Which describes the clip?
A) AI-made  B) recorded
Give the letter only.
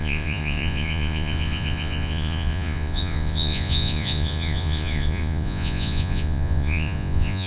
A